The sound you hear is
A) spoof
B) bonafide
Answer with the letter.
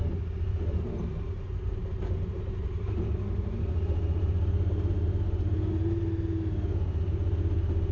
B